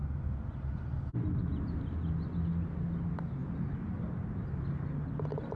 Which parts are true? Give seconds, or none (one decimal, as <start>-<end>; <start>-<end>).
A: 0.0-5.6